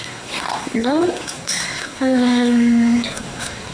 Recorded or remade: remade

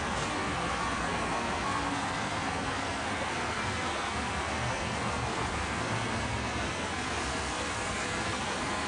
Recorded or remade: remade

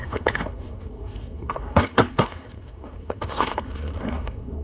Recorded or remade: remade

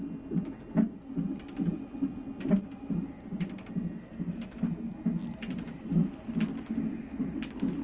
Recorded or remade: recorded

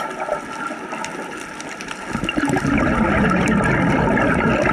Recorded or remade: recorded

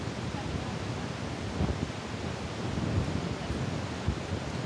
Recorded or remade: recorded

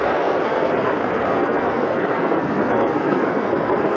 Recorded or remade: remade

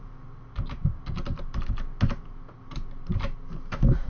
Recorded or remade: recorded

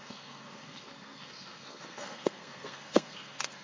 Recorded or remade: remade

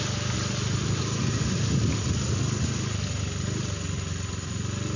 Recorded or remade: recorded